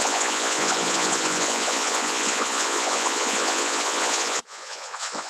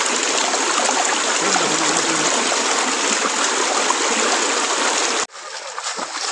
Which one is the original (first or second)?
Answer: second